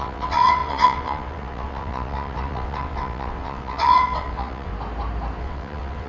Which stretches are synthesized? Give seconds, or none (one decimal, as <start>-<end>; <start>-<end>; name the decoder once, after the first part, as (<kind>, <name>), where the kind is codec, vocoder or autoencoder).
0.0-4.7 (vocoder, WaveNeXt); 5.4-6.1